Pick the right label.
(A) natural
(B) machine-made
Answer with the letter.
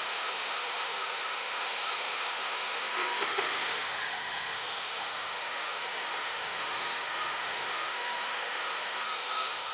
B